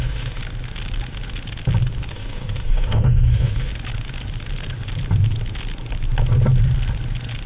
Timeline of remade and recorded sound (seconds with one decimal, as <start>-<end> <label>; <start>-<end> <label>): 0.0-0.4 remade; 0.4-2.1 recorded; 2.1-3.7 remade; 3.7-7.5 recorded